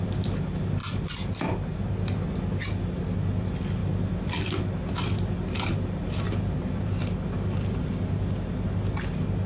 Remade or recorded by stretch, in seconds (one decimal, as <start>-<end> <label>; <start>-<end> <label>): 0.0-9.5 recorded